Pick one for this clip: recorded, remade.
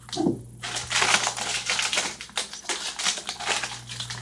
recorded